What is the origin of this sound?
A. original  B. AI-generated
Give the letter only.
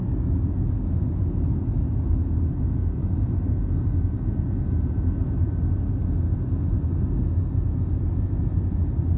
A